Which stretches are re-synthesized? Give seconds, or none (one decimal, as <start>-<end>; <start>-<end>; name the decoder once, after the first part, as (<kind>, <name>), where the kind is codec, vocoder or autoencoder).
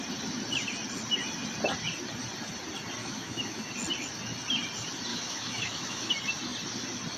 3.0-3.7 (autoencoder, DAC-VAE); 5.1-6.1